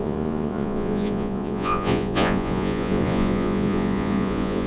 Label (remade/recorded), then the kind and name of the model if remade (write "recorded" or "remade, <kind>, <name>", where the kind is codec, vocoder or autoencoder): remade, vocoder, Vocos